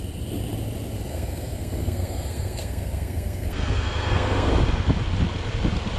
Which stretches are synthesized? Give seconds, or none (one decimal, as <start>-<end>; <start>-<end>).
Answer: 1.1-4.5